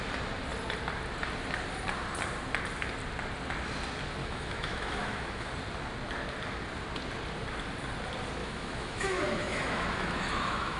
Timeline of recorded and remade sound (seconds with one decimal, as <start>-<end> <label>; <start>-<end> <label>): 0.0-4.2 recorded; 4.2-5.5 remade; 5.5-8.4 recorded; 8.4-10.8 remade